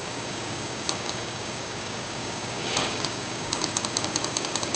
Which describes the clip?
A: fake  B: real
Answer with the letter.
A